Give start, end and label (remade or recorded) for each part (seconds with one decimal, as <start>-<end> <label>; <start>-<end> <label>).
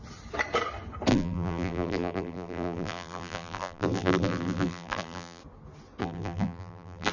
0.0-1.1 recorded; 1.1-5.4 remade; 5.4-6.0 recorded; 6.0-7.1 remade